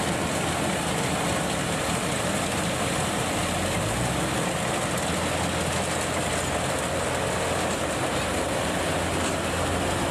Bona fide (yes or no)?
yes